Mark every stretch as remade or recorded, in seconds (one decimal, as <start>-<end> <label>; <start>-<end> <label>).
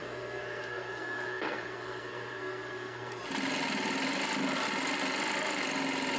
0.0-3.2 remade; 3.2-6.2 recorded